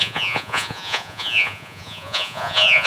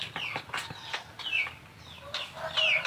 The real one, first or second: second